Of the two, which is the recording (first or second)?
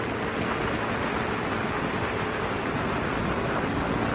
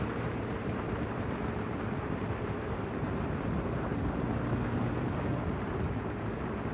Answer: first